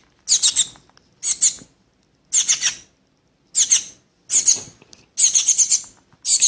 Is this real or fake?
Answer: real